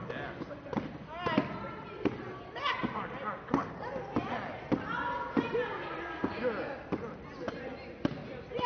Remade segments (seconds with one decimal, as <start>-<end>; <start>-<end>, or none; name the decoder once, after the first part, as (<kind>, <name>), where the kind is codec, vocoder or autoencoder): none